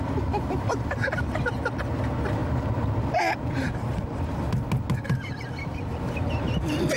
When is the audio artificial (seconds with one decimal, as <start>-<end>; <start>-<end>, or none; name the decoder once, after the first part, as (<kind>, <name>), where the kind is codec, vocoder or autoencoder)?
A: none